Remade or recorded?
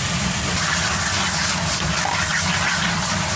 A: recorded